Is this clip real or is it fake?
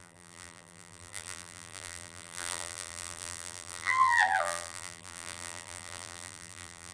fake